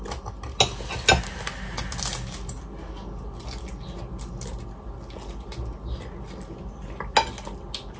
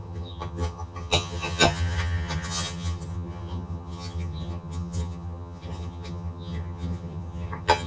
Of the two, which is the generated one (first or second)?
second